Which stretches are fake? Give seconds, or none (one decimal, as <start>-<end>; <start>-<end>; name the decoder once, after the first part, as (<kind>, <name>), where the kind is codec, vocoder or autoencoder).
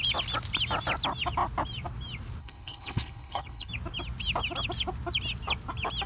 2.4-3.7 (codec, HILCodec)